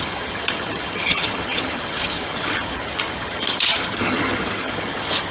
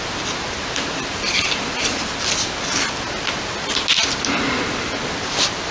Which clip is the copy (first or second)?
first